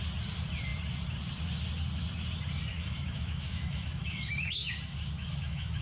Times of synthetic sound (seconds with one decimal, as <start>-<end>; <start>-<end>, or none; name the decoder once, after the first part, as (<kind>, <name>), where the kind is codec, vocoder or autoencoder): 2.7-4.7 (autoencoder, DAC-VAE); 5.2-5.8